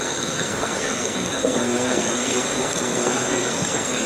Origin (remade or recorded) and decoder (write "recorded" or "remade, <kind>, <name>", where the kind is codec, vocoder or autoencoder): remade, codec, SNAC